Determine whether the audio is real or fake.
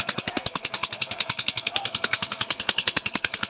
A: fake